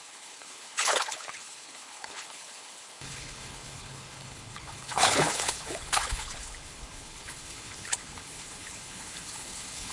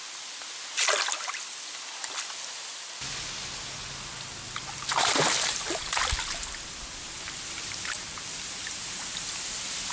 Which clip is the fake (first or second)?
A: first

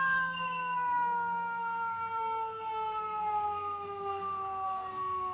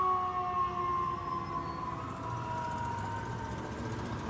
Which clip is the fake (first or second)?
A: first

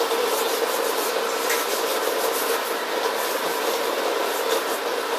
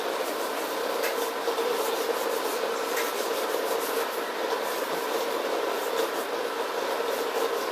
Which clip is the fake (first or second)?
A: second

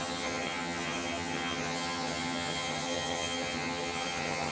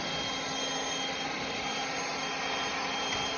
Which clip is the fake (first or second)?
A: first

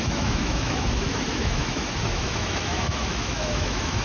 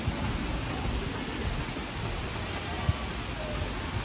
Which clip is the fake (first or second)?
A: first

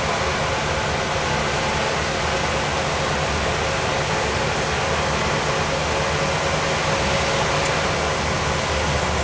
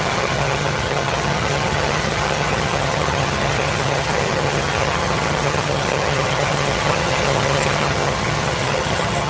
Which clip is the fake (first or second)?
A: second